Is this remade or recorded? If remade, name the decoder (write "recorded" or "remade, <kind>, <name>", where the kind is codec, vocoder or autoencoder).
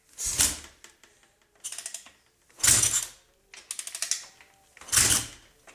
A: recorded